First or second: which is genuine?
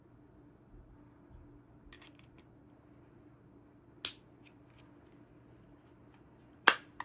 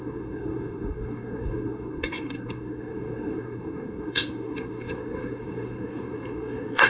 first